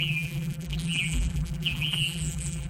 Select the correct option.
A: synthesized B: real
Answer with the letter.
A